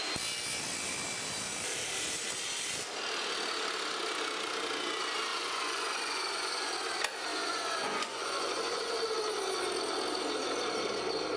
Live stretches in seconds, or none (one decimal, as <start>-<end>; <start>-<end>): 0.0-5.3; 6.7-7.3; 8.9-11.4